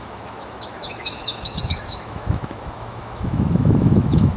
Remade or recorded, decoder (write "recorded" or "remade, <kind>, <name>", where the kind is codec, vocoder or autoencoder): remade, autoencoder, DAC-VAE